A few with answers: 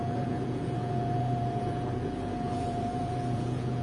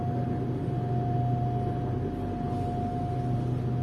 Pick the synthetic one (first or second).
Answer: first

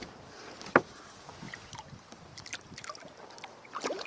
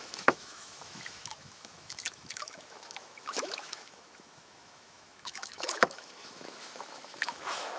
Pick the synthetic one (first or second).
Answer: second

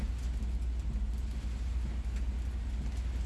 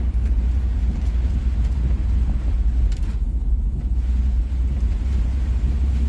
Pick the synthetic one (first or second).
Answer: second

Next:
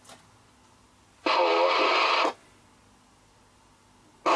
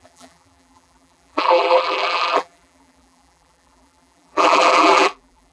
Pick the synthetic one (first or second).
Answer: second